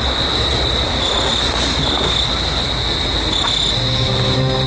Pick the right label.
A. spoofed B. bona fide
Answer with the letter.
B